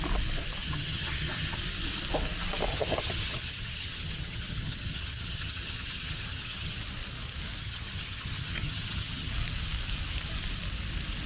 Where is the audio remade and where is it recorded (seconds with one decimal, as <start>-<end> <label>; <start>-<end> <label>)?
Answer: 0.0-0.6 recorded; 0.6-1.6 remade; 1.6-2.7 recorded; 2.7-6.8 remade; 6.8-7.6 recorded; 7.6-9.3 remade; 9.3-11.3 recorded